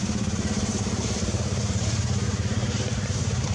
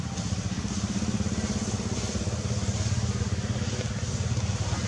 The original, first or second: second